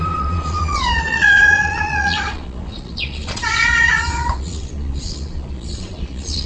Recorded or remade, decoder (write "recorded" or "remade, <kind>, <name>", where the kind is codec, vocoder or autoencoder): remade, vocoder, Vocos